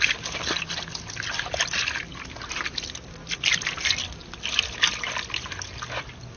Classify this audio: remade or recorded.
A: recorded